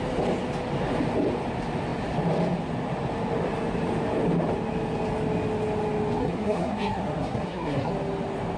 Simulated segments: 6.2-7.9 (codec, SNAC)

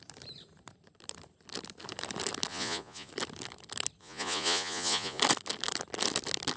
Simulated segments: 2.5-3.1 (vocoder, Vocos); 4.0-5.2

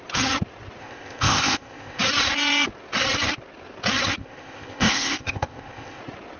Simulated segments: 0.8-2.0 (codec, ZipCodec); 4.2-6.0

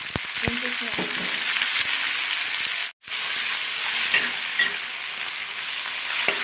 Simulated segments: none

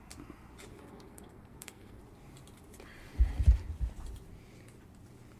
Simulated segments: 0.7-2.0 (codec, SNAC)

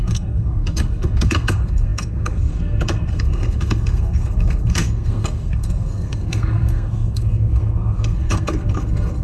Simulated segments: 0.0-9.2 (codec, SNAC)